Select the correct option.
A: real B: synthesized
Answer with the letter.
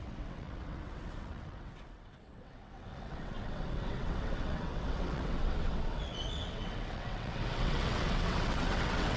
B